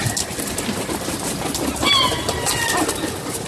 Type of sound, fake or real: real